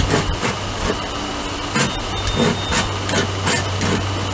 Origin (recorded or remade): recorded